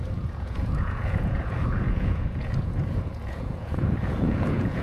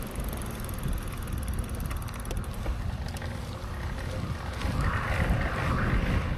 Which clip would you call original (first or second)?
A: second